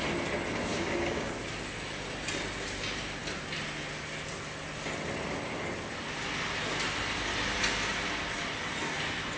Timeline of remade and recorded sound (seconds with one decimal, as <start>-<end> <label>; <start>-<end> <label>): 0.0-0.7 recorded; 0.7-1.3 remade; 1.3-9.4 recorded